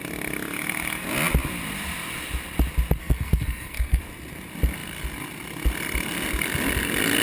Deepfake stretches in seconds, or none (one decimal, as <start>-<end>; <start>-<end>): 3.0-4.0